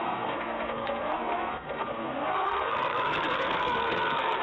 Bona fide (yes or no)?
no